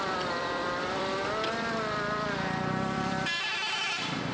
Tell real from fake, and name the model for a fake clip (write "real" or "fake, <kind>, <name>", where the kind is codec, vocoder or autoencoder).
fake, vocoder, BigVGAN v2